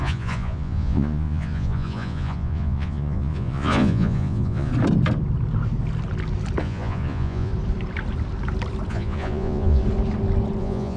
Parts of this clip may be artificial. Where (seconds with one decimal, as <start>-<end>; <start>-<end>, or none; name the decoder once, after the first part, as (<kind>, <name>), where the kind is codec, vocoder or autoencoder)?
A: 0.0-4.7 (vocoder, Vocos); 6.6-7.5; 8.9-9.8; 10.6-11.0